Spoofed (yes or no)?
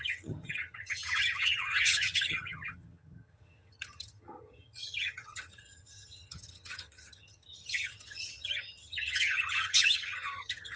yes